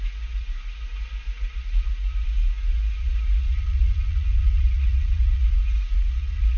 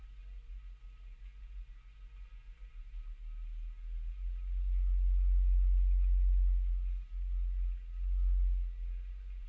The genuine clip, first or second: second